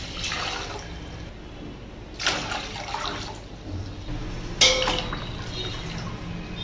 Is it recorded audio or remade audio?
recorded